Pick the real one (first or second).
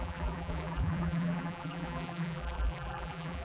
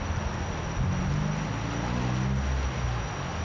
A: second